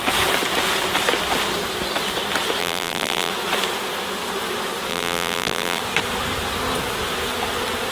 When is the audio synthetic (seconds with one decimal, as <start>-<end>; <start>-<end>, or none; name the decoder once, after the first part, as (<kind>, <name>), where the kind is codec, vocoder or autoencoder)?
2.6-3.3 (vocoder, BigVGAN v2); 4.9-5.8